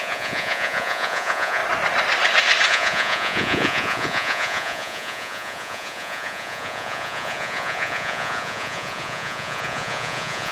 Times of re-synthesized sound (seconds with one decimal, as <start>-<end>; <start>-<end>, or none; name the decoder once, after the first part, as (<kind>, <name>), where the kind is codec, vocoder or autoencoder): 0.0-1.6 (vocoder, Vocos); 2.7-10.5